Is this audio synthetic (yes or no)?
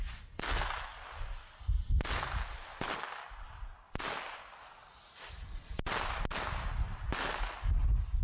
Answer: no